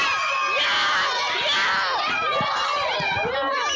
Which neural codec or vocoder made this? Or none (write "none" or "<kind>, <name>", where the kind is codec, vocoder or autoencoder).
none